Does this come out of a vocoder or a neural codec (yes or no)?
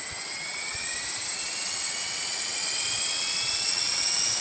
yes